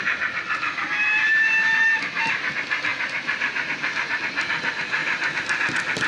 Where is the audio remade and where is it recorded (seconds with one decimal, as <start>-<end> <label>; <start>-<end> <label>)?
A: 0.0-0.8 recorded; 0.8-2.4 remade; 2.4-2.9 recorded; 2.9-4.1 remade; 4.1-5.0 recorded; 5.0-5.6 remade; 5.6-6.1 recorded